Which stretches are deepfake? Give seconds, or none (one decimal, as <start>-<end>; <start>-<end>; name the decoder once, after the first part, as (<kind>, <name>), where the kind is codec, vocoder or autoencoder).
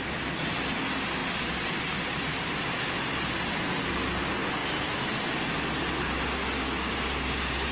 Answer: 1.2-1.8 (vocoder, BigVGAN v2)